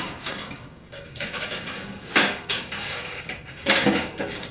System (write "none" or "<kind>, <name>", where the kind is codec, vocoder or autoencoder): codec, DAC